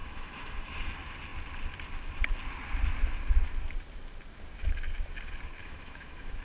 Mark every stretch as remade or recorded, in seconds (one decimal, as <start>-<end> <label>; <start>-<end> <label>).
0.0-0.9 remade; 0.9-5.6 recorded; 5.6-6.4 remade